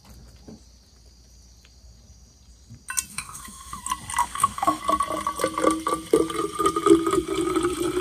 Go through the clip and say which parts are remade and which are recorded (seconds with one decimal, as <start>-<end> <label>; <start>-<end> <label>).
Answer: 0.0-3.1 recorded; 3.1-3.8 remade; 3.8-4.2 recorded; 4.2-4.8 remade; 4.8-8.0 recorded